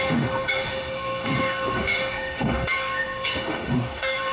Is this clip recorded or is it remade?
remade